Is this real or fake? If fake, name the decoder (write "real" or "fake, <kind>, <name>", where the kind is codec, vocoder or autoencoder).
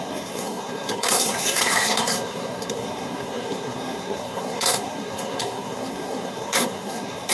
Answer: fake, codec, SNAC